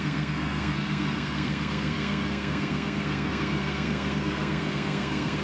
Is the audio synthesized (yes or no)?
yes